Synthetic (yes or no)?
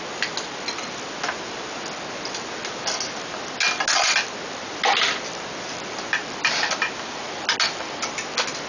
no